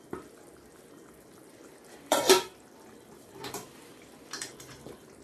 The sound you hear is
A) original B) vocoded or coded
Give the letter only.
B